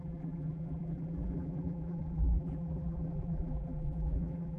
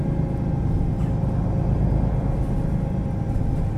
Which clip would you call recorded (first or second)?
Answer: second